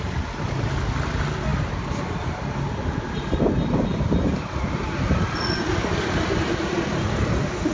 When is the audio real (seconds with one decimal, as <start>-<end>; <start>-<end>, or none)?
0.0-7.7

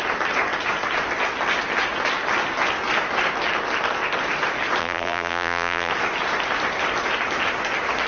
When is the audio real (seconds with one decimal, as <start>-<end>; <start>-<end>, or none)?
0.0-4.8; 5.9-8.1

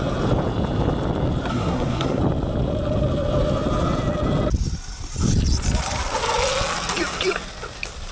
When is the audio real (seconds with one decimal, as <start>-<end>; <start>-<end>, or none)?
0.0-1.5; 2.2-8.1

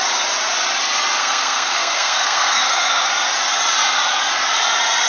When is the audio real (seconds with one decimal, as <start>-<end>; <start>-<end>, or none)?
0.0-1.2; 3.1-5.1